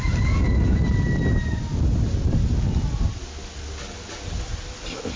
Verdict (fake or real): real